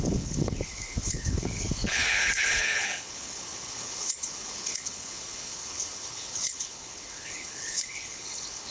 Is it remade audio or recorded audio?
remade